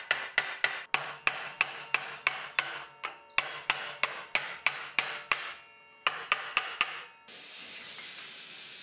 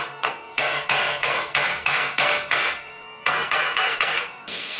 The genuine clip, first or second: first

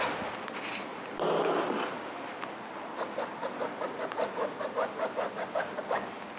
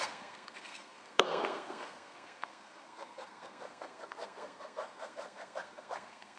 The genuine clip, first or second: first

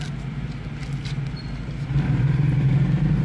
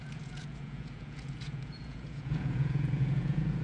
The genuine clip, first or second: first